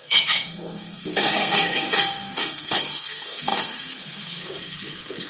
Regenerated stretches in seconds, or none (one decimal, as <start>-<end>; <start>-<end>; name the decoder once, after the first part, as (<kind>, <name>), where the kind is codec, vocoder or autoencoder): 0.0-5.3 (codec, SNAC)